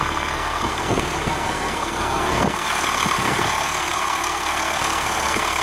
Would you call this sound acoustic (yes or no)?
no